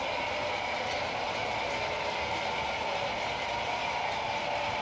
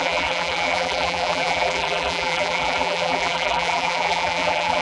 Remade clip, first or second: second